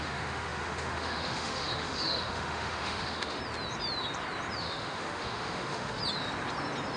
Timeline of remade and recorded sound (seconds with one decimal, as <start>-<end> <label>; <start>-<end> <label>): 0.0-3.4 remade; 3.4-4.6 recorded; 4.6-6.0 remade; 6.0-7.0 recorded